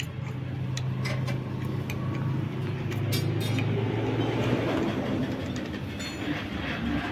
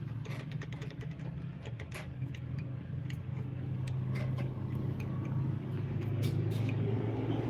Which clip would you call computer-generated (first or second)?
second